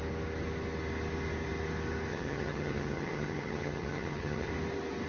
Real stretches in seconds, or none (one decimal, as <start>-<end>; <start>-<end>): 0.0-2.1; 4.5-5.1